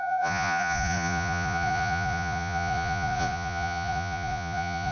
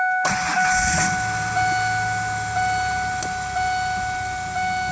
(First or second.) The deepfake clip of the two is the first